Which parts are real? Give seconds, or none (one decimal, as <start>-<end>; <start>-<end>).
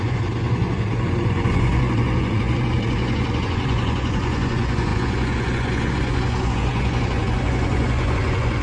none